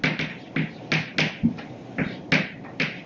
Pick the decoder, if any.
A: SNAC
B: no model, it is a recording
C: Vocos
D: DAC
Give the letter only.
B